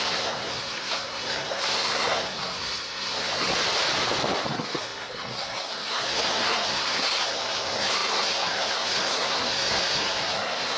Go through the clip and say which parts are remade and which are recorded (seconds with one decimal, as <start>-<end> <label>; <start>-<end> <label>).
0.0-3.5 remade; 3.5-4.5 recorded; 4.5-10.8 remade